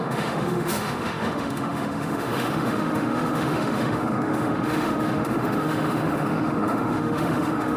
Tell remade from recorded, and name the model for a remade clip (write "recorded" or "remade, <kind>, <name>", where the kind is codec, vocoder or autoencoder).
remade, autoencoder, DAC-VAE